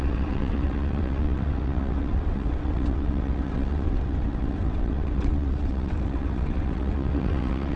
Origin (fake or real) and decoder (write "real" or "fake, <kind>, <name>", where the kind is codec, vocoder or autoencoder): fake, vocoder, WaveNeXt